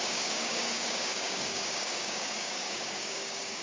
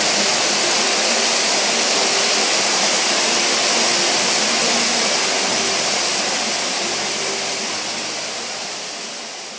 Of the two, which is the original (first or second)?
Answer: second